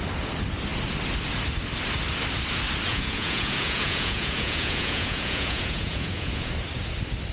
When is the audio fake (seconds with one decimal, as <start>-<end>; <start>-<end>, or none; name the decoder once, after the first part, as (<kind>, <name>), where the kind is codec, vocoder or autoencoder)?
2.9-6.5 (vocoder, Vocos)